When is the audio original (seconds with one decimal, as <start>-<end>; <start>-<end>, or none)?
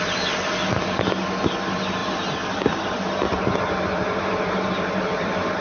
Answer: 0.0-2.0